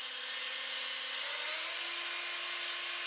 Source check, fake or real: real